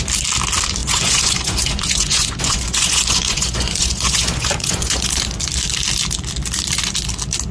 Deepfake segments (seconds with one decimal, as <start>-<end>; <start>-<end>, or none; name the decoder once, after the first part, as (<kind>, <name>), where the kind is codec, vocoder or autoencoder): 0.8-5.2 (vocoder, Vocos)